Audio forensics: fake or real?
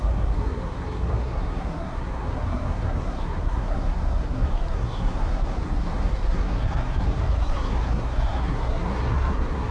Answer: fake